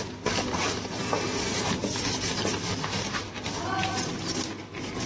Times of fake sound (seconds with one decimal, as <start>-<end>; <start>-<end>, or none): 2.8-3.6